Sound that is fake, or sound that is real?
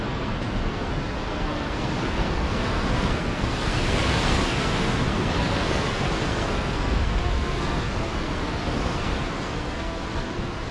fake